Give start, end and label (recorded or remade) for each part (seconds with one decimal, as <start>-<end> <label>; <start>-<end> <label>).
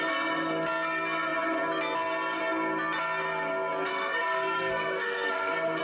0.0-3.9 recorded; 3.9-5.8 remade